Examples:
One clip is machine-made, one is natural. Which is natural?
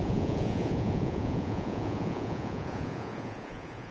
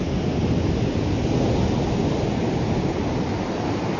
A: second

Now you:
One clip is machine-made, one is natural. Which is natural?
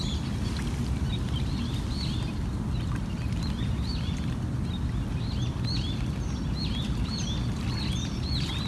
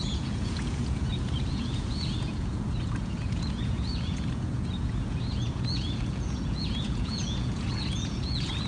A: first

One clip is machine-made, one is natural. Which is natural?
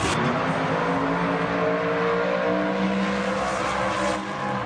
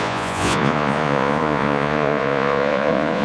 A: first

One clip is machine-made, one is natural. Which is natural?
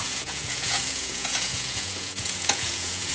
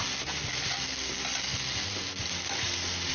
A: second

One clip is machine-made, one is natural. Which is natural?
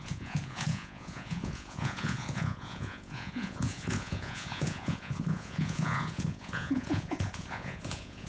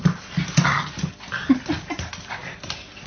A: second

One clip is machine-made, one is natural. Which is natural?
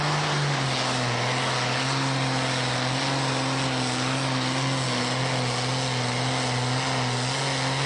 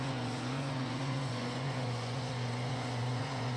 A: first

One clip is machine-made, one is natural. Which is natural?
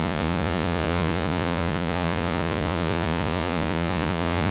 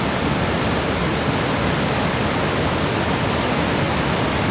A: second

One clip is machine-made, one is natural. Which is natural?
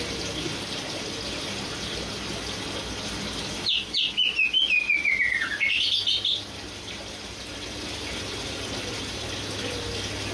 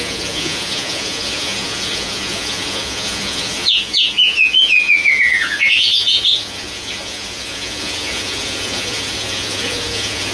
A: first